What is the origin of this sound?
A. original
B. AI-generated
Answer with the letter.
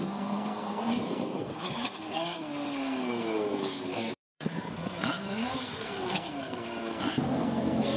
B